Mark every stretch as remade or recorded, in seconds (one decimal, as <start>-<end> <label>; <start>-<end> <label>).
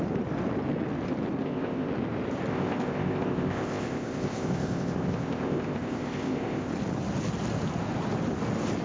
0.0-1.4 recorded; 1.4-1.9 remade; 1.9-2.5 recorded; 2.5-6.7 remade; 6.7-8.8 recorded